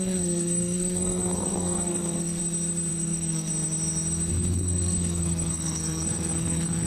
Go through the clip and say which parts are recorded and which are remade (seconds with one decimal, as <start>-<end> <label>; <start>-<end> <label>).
0.0-2.4 remade; 2.4-2.9 recorded; 2.9-3.5 remade; 3.5-4.3 recorded; 4.3-6.9 remade